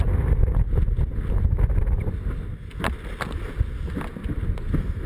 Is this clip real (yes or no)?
yes